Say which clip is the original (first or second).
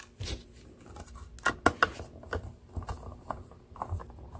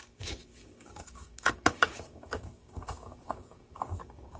first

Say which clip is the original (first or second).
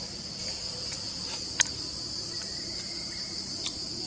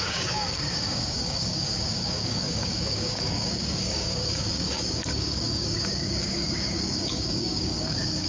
first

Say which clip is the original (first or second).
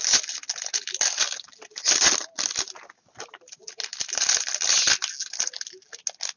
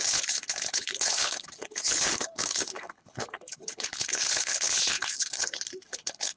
first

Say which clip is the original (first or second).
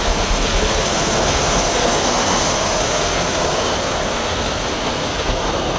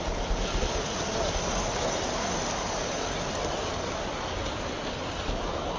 second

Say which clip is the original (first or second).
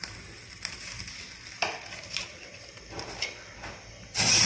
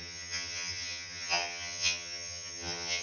first